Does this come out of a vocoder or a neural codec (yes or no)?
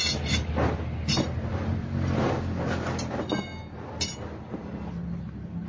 no